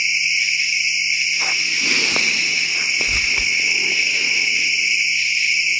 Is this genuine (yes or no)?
yes